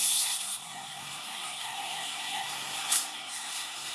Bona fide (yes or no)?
no